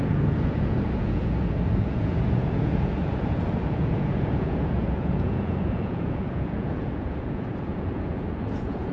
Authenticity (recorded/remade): remade